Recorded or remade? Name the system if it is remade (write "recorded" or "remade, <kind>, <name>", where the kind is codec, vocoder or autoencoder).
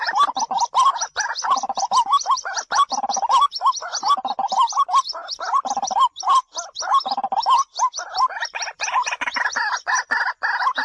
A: remade, vocoder, BigVGAN v2